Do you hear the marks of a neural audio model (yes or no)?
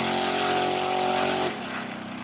no